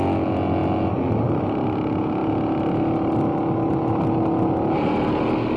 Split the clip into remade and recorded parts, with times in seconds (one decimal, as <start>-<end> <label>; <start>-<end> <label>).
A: 0.0-5.6 recorded